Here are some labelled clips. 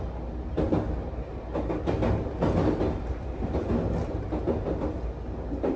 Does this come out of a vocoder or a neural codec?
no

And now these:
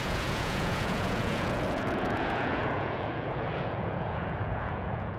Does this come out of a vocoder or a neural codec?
yes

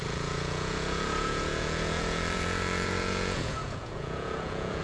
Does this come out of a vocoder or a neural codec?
yes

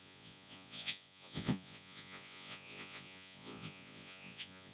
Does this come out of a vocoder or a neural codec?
yes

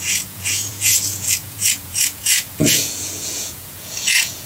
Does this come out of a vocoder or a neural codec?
yes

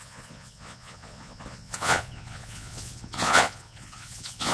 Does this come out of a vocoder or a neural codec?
yes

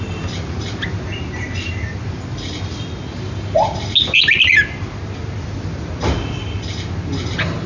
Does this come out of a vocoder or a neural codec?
no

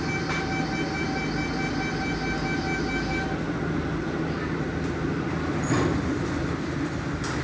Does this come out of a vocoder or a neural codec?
no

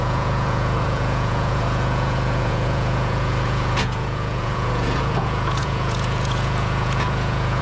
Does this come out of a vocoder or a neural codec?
yes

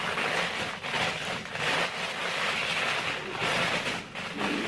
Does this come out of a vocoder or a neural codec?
no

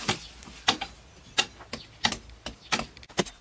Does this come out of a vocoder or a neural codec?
no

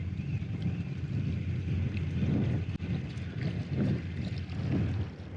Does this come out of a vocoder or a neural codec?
no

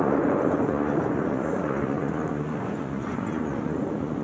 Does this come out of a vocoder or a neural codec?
yes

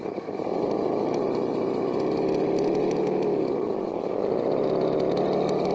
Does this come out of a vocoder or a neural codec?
no